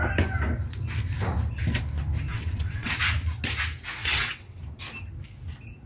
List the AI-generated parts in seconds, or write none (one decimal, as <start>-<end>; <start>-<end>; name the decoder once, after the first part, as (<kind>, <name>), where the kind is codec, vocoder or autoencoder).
2.3-3.0 (vocoder, WaveNeXt); 4.0-4.6